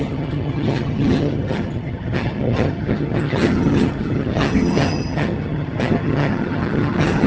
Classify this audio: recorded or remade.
remade